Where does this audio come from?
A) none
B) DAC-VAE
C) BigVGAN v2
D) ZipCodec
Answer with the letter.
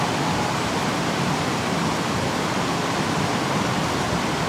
C